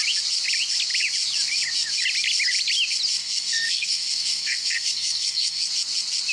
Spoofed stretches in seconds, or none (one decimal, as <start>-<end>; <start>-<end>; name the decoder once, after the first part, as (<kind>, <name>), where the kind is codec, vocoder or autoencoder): 3.2-5.7 (codec, SNAC)